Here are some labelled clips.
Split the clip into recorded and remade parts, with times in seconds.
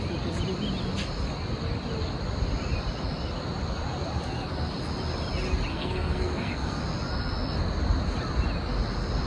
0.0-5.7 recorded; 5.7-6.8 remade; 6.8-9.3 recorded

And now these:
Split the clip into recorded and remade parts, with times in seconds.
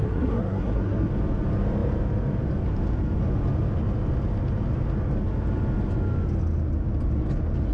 0.0-1.1 remade; 1.1-7.7 recorded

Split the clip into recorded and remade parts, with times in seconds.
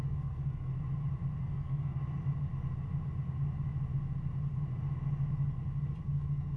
0.0-0.7 remade; 0.7-1.4 recorded; 1.4-2.0 remade; 2.0-6.0 recorded; 6.0-6.6 remade